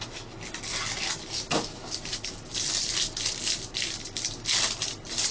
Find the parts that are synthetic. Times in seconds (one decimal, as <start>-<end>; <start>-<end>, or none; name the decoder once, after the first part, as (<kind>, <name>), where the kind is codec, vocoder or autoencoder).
none